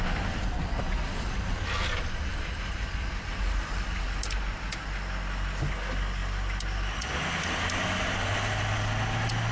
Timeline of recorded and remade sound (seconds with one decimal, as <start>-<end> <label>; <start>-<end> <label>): 0.0-9.5 recorded